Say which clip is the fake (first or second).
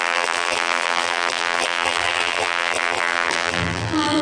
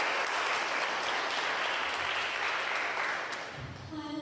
first